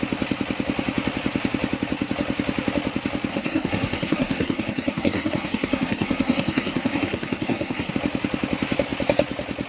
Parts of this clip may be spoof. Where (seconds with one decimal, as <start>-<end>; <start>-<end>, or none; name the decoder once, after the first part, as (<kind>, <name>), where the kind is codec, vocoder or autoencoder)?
3.3-7.9 (codec, SNAC)